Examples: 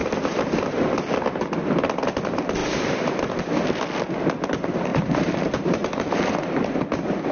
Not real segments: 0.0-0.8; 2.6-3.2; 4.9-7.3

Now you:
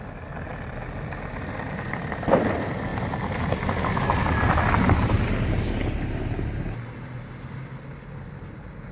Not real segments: none

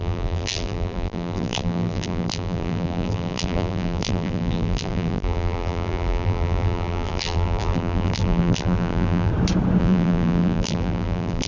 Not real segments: 0.0-9.3; 9.8-11.5

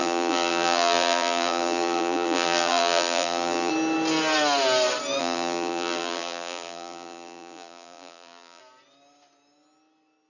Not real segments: 0.0-3.7; 5.2-8.6

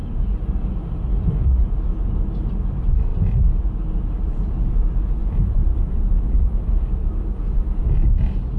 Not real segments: 5.2-6.4

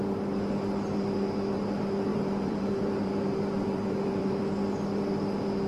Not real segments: 2.1-4.4

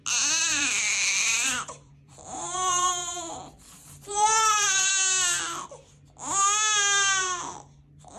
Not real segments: 0.4-4.9; 7.2-8.2